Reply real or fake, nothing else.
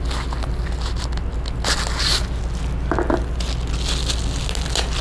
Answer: real